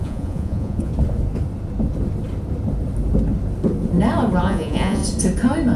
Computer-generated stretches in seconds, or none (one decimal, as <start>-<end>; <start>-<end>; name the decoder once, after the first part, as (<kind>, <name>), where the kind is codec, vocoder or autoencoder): 0.0-0.9 (vocoder, Vocos); 4.4-5.0